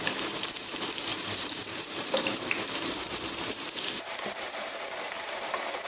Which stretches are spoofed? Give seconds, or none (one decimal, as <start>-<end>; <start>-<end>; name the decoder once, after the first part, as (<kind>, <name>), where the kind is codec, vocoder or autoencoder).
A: 0.0-5.9 (vocoder, BigVGAN v2)